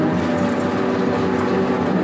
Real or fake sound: real